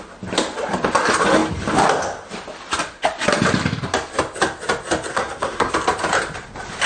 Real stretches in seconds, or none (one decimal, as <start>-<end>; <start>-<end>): 0.0-5.1; 5.7-6.9